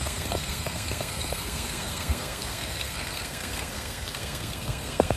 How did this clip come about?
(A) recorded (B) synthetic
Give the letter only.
B